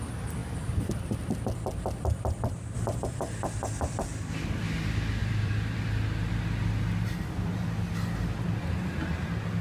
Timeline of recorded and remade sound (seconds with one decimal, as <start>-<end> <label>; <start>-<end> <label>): 0.0-0.4 recorded; 0.4-3.1 remade; 3.1-5.2 recorded; 5.2-5.8 remade; 5.8-9.6 recorded